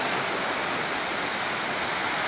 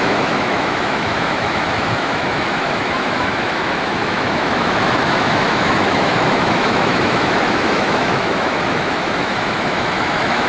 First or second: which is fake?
second